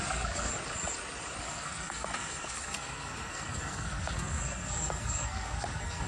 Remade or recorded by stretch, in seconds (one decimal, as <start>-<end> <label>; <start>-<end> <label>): 0.0-0.5 remade; 0.5-1.4 recorded; 1.4-6.1 remade